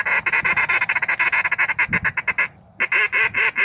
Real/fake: real